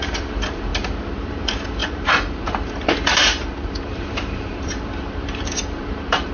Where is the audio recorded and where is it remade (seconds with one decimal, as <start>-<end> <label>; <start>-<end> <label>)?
0.0-0.7 remade; 0.7-1.3 recorded; 1.3-6.3 remade